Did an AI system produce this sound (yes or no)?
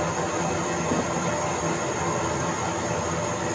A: no